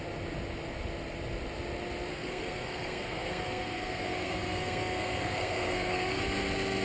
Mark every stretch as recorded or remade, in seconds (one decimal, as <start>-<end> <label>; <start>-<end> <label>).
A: 0.0-2.1 recorded; 2.1-6.2 remade; 6.2-6.8 recorded